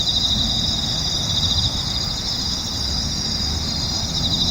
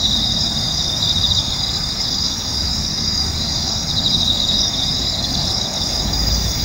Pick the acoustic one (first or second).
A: first